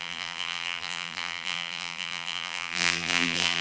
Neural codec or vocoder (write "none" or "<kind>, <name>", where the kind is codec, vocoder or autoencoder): vocoder, BigVGAN v2